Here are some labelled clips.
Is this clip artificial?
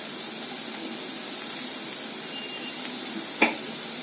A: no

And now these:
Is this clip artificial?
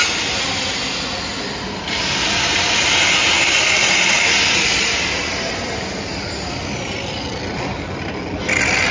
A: no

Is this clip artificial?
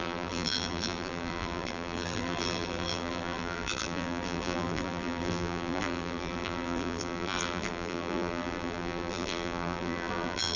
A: yes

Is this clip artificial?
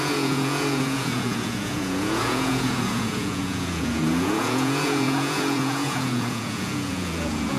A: yes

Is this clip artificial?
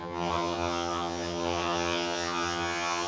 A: yes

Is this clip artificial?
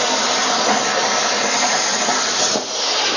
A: yes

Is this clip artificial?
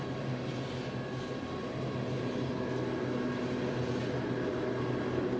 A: no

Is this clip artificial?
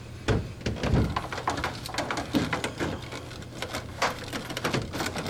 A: no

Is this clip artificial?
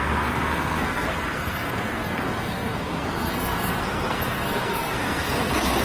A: yes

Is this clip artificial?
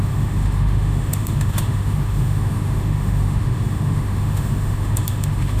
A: yes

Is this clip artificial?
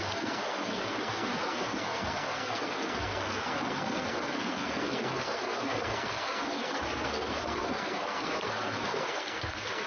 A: yes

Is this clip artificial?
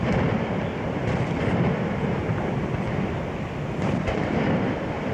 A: no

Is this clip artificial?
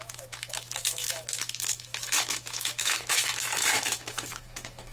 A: yes